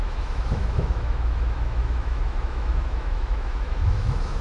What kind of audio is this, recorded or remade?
remade